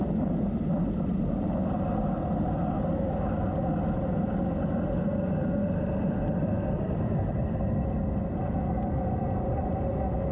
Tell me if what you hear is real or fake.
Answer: real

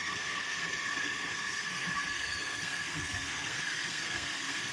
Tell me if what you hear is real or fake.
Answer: fake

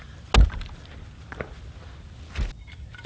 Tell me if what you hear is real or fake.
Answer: real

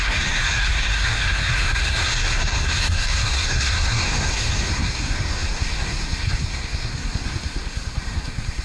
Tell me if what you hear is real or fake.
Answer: fake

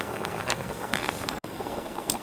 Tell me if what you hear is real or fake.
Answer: fake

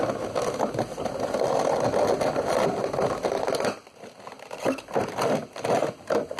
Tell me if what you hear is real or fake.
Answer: real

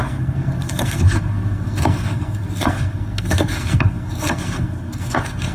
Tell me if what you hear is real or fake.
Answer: fake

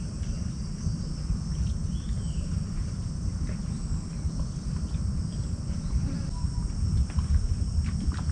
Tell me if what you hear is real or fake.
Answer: real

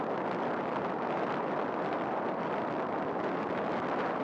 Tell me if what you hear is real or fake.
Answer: real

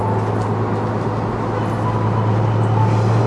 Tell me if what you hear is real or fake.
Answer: real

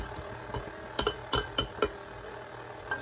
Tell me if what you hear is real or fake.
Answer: real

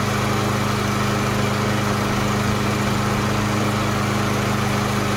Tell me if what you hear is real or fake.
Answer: real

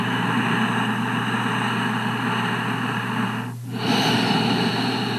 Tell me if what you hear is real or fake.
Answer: real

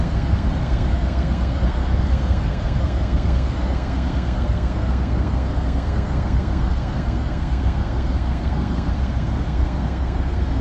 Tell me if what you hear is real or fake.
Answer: fake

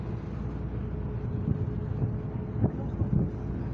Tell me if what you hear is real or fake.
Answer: real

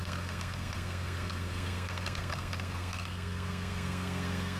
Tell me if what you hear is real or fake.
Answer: fake